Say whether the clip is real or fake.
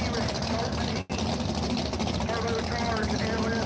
real